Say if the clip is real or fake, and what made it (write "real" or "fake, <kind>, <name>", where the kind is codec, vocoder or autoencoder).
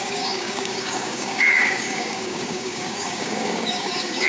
fake, codec, DAC